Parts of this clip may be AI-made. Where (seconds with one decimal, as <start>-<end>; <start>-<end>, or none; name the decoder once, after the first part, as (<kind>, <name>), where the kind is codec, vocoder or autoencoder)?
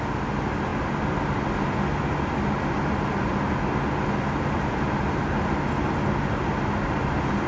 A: none